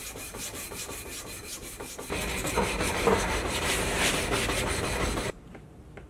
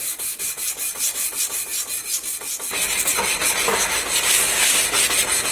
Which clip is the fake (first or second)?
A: first